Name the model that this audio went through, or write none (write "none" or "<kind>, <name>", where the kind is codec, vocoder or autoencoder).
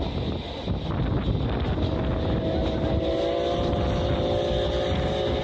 none